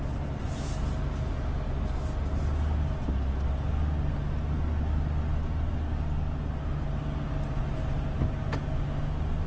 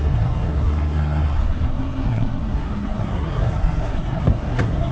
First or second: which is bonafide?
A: first